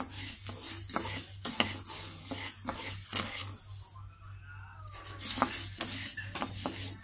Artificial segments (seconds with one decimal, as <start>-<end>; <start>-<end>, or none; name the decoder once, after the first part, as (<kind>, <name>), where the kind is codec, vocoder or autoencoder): none